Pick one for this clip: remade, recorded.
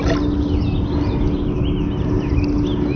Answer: recorded